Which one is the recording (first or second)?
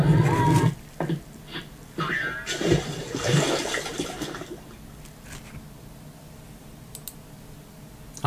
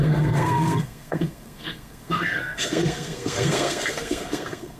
first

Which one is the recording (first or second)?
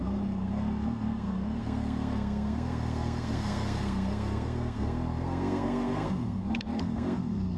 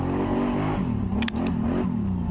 second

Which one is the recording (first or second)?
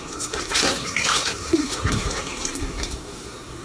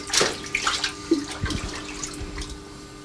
second